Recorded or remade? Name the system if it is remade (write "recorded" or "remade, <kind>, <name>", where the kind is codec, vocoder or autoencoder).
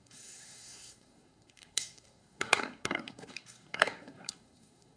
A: remade, codec, SNAC